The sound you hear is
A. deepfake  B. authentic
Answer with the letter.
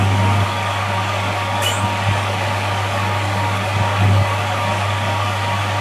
A